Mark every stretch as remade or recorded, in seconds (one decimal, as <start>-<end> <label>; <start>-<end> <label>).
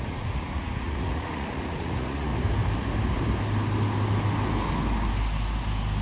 0.0-2.3 remade; 2.3-6.0 recorded